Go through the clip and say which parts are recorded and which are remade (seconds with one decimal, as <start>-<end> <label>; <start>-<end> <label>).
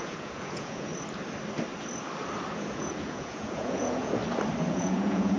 0.0-0.9 remade; 0.9-2.6 recorded; 2.6-4.2 remade; 4.2-4.7 recorded; 4.7-5.4 remade